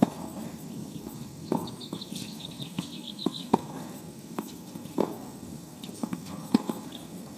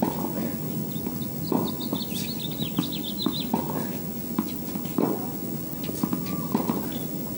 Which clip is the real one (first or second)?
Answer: second